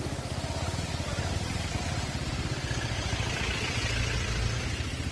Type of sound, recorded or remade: recorded